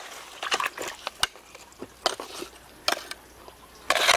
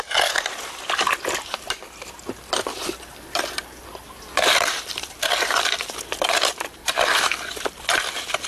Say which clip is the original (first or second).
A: first